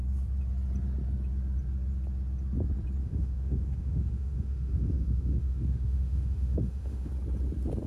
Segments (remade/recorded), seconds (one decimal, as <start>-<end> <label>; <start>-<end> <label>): 0.0-3.0 recorded; 3.0-7.1 remade; 7.1-7.9 recorded